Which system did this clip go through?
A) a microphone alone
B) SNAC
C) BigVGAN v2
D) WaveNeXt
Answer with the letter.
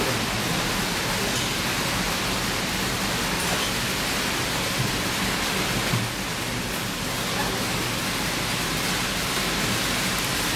A